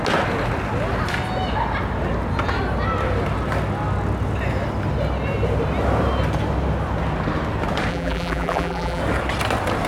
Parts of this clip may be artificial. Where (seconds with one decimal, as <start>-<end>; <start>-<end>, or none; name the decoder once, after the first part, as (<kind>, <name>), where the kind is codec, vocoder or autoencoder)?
7.9-9.0 (vocoder, BigVGAN v2)